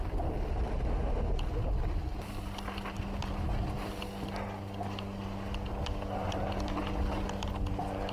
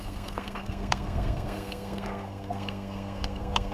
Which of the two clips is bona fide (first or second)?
first